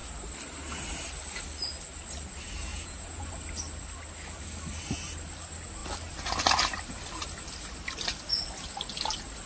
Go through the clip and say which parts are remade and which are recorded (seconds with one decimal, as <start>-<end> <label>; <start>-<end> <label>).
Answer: 0.0-2.7 recorded; 2.7-3.3 remade; 3.3-9.5 recorded